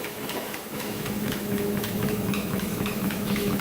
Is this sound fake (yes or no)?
yes